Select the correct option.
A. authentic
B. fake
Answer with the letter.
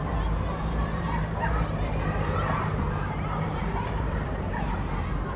B